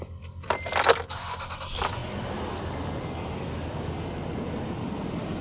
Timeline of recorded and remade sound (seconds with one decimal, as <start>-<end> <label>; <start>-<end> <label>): 0.0-5.4 recorded